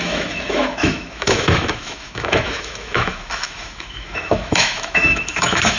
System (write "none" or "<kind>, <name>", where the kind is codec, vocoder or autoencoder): autoencoder, DAC-VAE